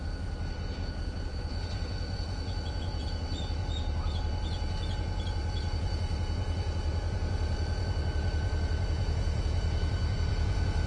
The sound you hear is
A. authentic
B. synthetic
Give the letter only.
B